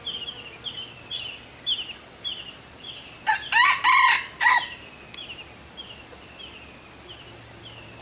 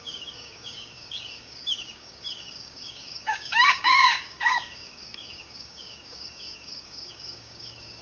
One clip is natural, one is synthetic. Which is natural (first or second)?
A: first